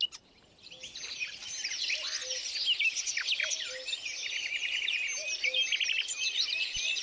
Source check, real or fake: real